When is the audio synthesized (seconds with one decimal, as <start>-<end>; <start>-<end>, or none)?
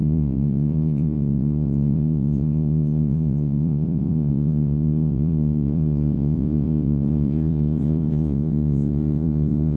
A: 0.0-9.8